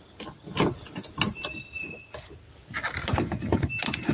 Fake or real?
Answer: real